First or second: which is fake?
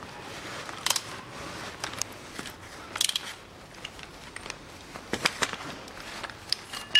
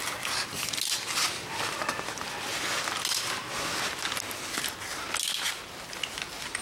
first